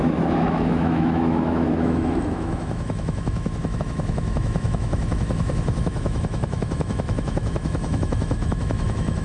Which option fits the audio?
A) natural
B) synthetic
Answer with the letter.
B